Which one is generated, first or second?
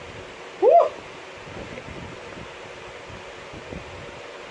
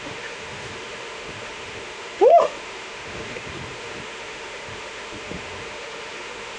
second